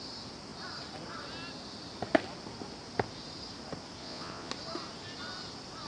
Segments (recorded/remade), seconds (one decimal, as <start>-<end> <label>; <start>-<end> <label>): 0.0-4.0 recorded; 4.0-4.5 remade; 4.5-5.9 recorded

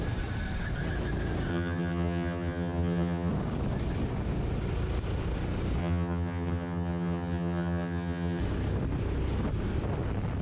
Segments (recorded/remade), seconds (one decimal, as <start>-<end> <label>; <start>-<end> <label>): 0.0-1.5 recorded; 1.5-3.3 remade; 3.3-5.8 recorded; 5.8-8.4 remade; 8.4-10.4 recorded

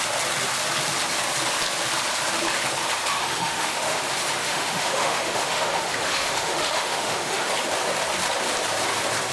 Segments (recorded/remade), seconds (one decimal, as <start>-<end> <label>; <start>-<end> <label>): 0.0-3.1 recorded; 3.1-4.0 remade; 4.0-4.4 recorded; 4.4-7.5 remade; 7.5-9.3 recorded

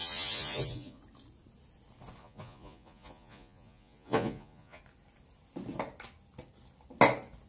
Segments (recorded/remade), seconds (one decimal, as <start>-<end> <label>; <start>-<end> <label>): 0.0-1.0 remade; 1.0-2.2 recorded; 2.2-4.8 remade; 4.8-7.5 recorded